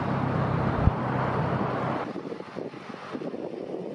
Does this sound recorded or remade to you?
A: recorded